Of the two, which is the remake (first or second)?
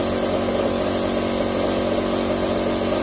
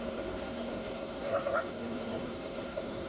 second